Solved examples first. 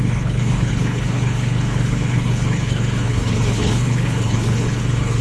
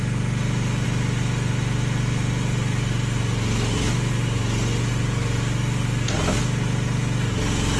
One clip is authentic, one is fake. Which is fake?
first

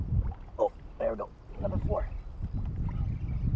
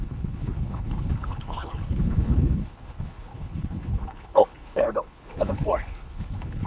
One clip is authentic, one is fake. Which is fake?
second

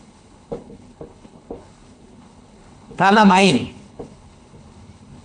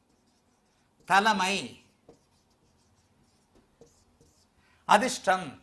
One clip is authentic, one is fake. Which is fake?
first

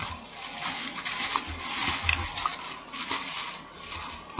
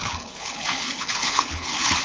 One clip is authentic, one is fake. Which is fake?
second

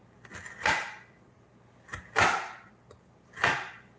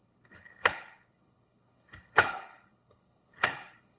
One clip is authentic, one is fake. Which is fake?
second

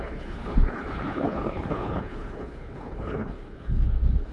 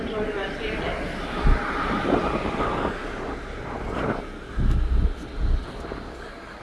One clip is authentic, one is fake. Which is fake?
first